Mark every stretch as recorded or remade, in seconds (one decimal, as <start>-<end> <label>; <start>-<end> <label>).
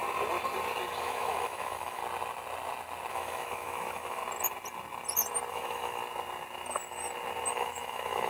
0.0-1.0 recorded; 1.0-2.0 remade; 2.0-3.1 recorded; 3.1-4.2 remade; 4.2-5.5 recorded; 5.5-6.0 remade; 6.0-7.5 recorded; 7.5-8.3 remade